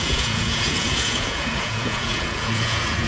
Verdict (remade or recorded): remade